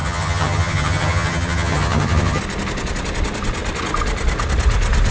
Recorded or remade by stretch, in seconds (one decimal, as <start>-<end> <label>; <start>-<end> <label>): 0.0-2.4 remade; 2.4-5.1 recorded